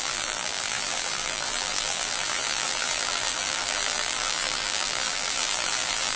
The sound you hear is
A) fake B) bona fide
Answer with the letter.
A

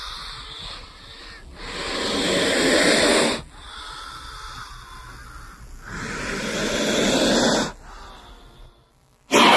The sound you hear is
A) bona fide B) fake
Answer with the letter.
A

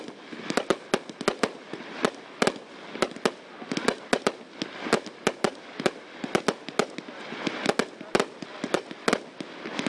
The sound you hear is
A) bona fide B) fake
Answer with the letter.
A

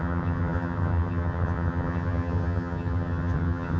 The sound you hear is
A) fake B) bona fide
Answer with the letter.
A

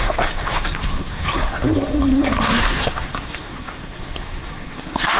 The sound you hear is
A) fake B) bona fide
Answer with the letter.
A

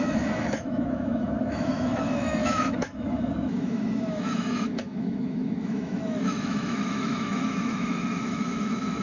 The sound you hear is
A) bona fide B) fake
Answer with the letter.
B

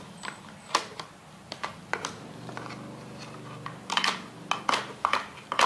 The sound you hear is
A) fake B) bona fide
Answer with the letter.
B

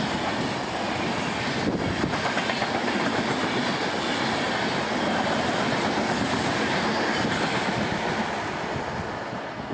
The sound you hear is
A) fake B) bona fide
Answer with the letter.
B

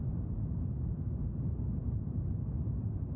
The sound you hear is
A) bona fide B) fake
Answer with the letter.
A